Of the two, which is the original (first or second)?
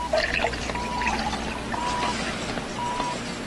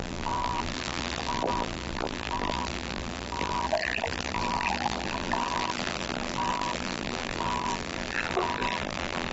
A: first